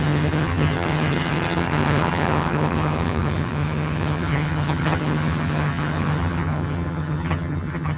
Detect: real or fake fake